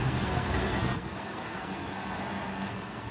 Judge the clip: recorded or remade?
remade